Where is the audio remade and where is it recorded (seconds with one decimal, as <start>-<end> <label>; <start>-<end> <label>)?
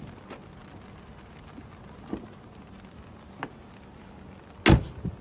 0.0-5.2 recorded